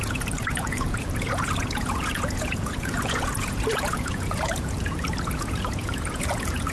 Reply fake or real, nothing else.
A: fake